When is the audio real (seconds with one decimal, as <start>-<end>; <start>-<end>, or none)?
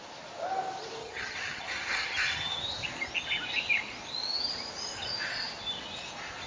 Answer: 0.0-1.0; 2.6-6.5